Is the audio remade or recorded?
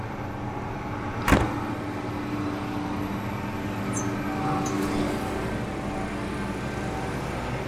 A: recorded